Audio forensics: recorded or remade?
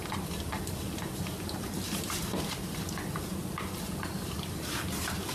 recorded